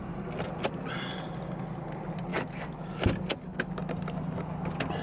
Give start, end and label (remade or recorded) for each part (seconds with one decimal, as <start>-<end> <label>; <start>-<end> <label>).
0.0-5.0 recorded